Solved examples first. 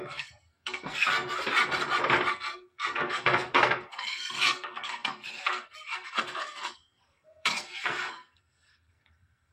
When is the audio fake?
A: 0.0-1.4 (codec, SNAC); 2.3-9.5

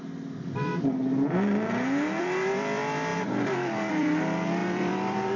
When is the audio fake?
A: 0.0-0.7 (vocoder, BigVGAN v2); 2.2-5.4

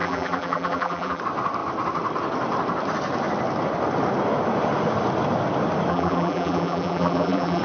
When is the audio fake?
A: 0.0-1.2 (vocoder, BigVGAN v2); 5.9-7.6

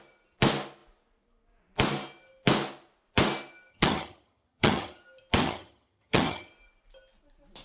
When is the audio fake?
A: 3.7-5.0 (vocoder, HiFi-GAN); 5.4-6.5